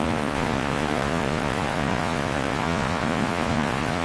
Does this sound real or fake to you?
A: fake